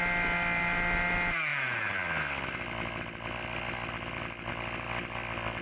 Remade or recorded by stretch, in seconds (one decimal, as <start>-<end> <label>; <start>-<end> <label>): 0.0-5.6 recorded